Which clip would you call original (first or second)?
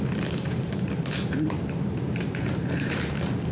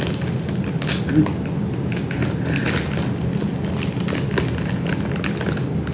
second